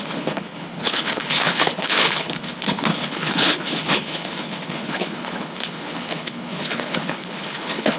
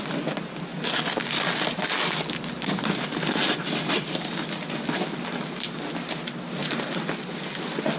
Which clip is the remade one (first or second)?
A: first